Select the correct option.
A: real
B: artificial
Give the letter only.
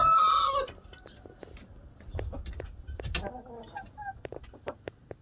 A